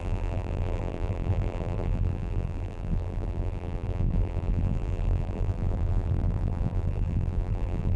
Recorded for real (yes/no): no